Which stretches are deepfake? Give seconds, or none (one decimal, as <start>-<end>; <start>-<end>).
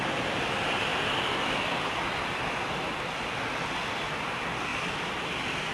none